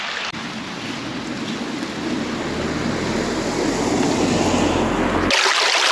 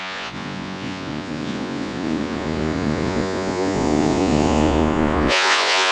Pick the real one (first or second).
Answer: first